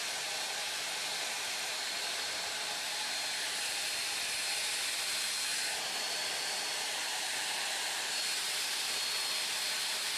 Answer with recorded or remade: recorded